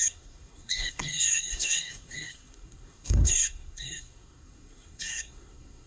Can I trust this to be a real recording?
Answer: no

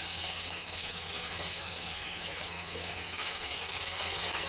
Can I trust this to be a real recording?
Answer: no